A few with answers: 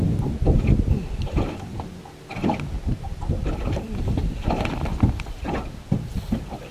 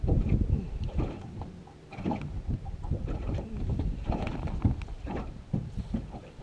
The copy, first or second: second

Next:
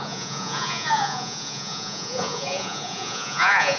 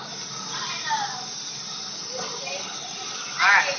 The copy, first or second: first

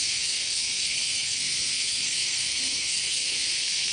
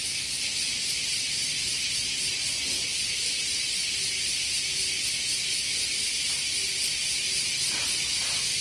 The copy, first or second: first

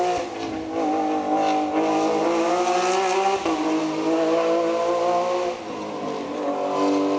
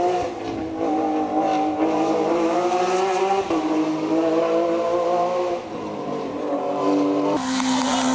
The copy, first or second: second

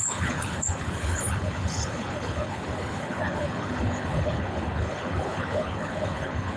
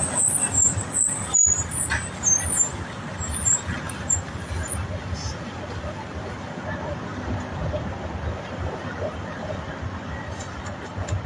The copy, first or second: first